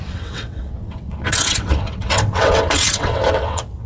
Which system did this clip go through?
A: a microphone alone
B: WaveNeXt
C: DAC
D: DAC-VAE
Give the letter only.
B